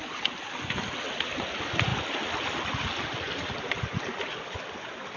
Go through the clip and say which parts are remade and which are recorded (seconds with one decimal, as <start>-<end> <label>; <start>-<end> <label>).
0.0-5.2 recorded